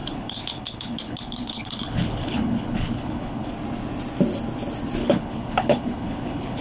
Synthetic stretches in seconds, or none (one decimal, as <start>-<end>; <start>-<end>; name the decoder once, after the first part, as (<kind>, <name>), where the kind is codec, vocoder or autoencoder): 0.0-3.5 (codec, HILCodec); 5.0-6.6